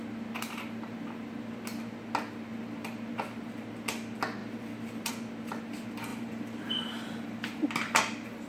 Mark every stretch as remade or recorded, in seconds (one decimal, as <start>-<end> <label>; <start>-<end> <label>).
0.0-4.4 recorded; 4.4-5.1 remade; 5.1-6.1 recorded; 6.1-8.0 remade; 8.0-8.5 recorded